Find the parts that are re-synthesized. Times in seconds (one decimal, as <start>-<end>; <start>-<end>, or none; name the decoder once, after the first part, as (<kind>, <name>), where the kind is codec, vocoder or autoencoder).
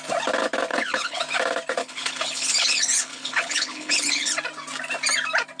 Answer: 0.7-1.2 (codec, HILCodec); 1.8-4.3